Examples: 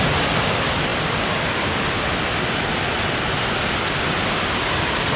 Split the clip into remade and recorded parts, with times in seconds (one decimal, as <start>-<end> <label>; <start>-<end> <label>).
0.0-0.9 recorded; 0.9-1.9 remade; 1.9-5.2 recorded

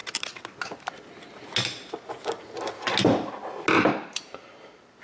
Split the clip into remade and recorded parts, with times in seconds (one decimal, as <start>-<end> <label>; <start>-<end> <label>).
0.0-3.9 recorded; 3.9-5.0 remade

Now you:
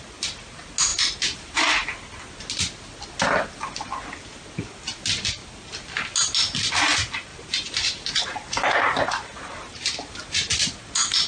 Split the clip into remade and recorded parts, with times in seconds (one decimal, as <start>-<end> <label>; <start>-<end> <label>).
0.0-0.9 recorded; 0.9-1.5 remade; 1.5-7.3 recorded; 7.3-10.5 remade; 10.5-11.3 recorded

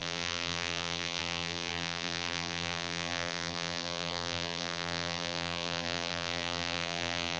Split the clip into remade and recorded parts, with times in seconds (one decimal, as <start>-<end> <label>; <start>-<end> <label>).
0.0-7.4 remade

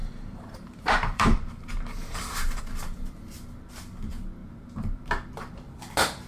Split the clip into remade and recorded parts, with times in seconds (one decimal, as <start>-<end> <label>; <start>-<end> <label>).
0.0-2.6 remade; 2.6-4.4 recorded; 4.4-5.0 remade; 5.0-6.3 recorded

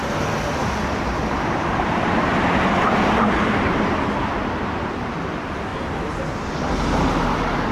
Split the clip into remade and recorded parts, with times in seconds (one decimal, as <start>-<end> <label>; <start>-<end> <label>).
0.0-0.6 recorded; 0.6-3.9 remade; 3.9-5.7 recorded; 5.7-6.5 remade; 6.5-7.7 recorded

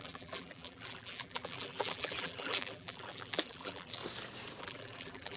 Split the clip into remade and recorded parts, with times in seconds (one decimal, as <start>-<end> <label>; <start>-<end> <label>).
0.0-4.0 remade; 4.0-4.6 recorded; 4.6-5.4 remade